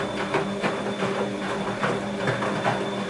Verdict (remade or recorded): recorded